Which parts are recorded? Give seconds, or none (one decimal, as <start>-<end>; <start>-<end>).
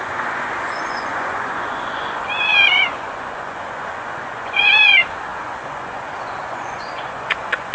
none